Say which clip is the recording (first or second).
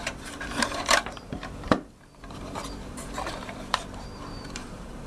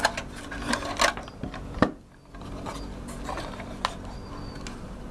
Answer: second